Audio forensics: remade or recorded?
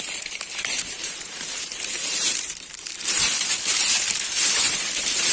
remade